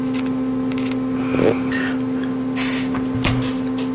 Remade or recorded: recorded